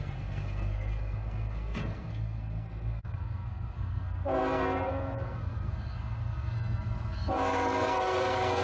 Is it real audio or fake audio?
fake